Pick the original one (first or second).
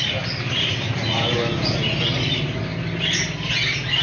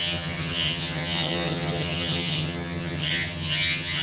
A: first